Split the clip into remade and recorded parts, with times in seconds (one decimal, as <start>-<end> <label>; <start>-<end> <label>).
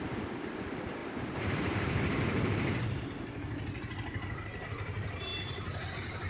0.0-1.0 recorded; 1.0-3.0 remade; 3.0-6.3 recorded